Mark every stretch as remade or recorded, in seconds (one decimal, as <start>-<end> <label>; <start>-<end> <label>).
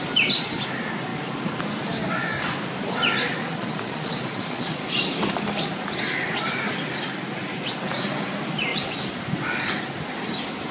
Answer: 0.0-3.4 recorded; 3.4-4.7 remade; 4.7-10.7 recorded